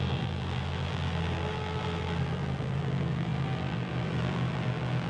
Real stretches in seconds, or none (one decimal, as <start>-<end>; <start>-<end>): none